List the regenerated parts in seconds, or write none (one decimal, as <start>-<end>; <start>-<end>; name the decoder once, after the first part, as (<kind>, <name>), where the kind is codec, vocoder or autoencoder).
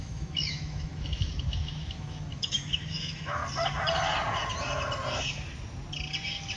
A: 0.0-3.4 (autoencoder, DAC-VAE)